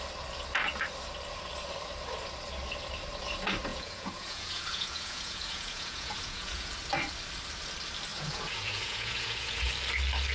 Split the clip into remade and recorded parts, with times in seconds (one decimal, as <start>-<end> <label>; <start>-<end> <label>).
0.0-3.7 recorded; 3.7-6.7 remade; 6.7-8.1 recorded; 8.1-9.7 remade; 9.7-10.3 recorded